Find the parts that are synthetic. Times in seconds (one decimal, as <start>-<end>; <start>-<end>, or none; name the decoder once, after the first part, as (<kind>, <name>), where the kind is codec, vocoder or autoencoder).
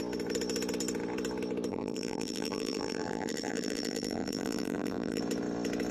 1.7-5.2 (vocoder, BigVGAN v2)